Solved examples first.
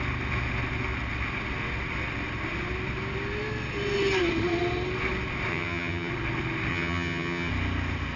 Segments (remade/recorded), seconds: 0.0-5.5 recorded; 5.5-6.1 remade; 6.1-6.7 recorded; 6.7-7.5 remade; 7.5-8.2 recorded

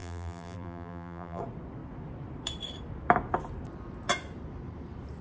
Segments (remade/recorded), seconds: 0.0-1.4 remade; 1.4-5.2 recorded

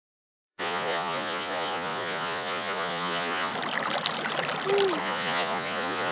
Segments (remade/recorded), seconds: 0.0-3.5 remade; 3.5-5.0 recorded; 5.0-6.1 remade

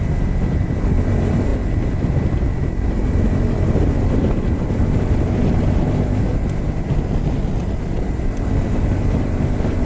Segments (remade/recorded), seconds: 0.0-6.3 remade; 6.3-7.6 recorded; 7.6-9.9 remade

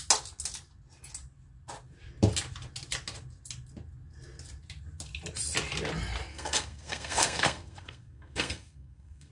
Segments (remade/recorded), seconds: 0.0-6.3 recorded; 6.3-9.3 remade

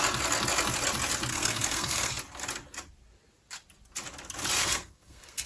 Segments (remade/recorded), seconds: 0.0-1.3 recorded; 1.3-2.1 remade; 2.1-4.6 recorded; 4.6-5.5 remade